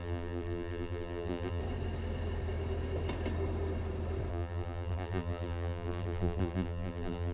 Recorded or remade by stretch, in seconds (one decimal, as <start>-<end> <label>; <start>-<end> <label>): 0.0-1.6 remade; 1.6-4.3 recorded; 4.3-7.3 remade